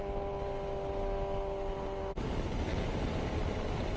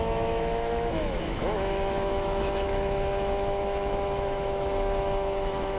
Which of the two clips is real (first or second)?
first